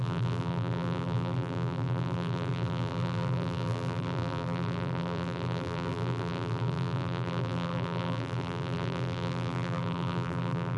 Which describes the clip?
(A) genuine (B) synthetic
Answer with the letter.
B